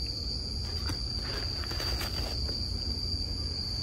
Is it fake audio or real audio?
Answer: real